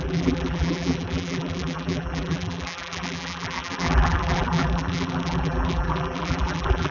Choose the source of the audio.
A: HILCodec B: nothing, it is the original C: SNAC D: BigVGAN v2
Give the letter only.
D